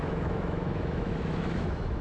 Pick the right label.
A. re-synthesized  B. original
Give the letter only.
A